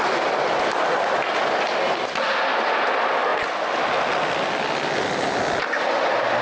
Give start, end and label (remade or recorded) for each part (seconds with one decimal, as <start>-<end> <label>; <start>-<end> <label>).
0.0-6.4 recorded